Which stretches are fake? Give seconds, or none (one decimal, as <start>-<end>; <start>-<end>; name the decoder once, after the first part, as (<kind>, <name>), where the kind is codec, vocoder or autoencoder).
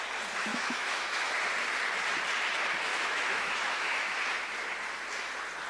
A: 0.5-1.3 (autoencoder, DAC-VAE); 2.9-4.2